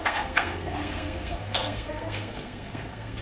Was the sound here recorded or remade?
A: remade